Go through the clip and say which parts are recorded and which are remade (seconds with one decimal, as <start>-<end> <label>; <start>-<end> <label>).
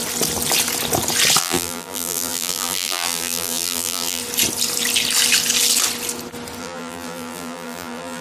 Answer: 0.0-1.4 recorded; 1.4-4.2 remade; 4.2-6.6 recorded; 6.6-8.2 remade